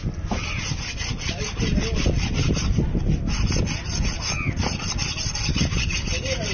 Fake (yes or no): no